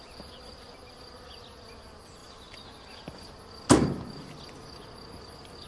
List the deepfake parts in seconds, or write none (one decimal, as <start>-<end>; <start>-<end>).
none